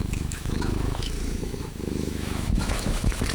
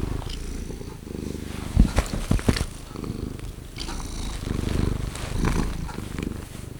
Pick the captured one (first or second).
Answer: second